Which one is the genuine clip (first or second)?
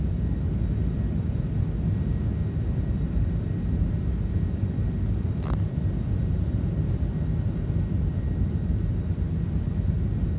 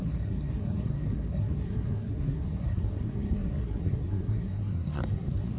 first